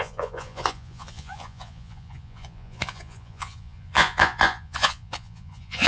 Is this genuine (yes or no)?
no